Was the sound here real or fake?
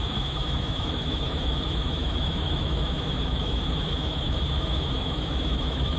fake